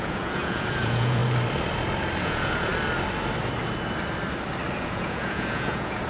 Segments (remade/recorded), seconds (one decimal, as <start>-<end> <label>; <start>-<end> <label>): 0.0-1.2 remade; 1.2-2.2 recorded; 2.2-2.7 remade; 2.7-4.8 recorded; 4.8-6.1 remade